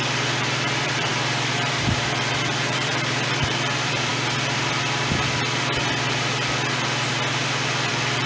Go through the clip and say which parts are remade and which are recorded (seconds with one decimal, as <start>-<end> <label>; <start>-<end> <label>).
0.0-4.1 remade; 4.1-7.9 recorded; 7.9-8.3 remade